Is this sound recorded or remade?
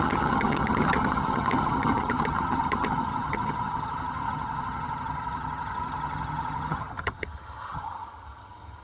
remade